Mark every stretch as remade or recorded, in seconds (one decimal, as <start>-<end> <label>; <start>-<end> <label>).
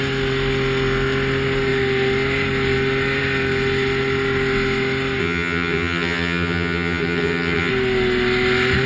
0.0-5.2 recorded; 5.2-7.7 remade; 7.7-8.9 recorded